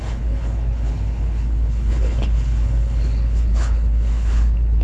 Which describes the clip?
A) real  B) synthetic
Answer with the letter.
B